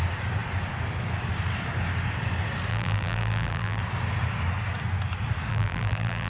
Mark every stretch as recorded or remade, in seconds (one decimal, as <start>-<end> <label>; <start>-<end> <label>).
0.0-2.7 recorded; 2.7-3.8 remade; 3.8-5.5 recorded; 5.5-6.3 remade